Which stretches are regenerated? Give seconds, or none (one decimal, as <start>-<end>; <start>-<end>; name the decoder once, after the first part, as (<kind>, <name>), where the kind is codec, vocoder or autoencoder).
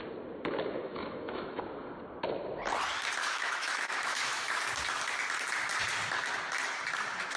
0.8-1.6 (autoencoder, DAC-VAE); 3.2-4.6